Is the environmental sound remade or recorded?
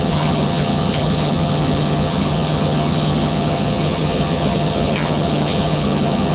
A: remade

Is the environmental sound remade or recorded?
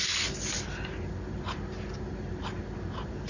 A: recorded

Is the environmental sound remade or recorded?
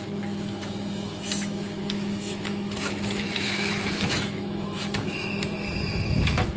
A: remade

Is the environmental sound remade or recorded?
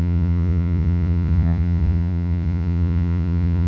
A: remade